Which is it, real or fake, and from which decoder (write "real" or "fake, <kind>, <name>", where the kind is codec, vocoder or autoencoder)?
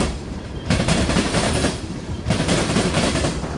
fake, vocoder, BigVGAN v2